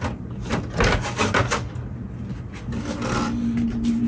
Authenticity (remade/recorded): recorded